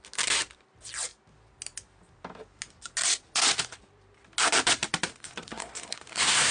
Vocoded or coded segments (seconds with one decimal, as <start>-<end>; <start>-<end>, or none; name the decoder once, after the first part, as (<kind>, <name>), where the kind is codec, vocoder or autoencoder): 5.1-6.5 (codec, SNAC)